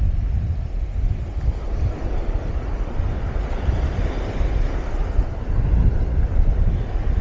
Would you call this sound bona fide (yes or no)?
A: yes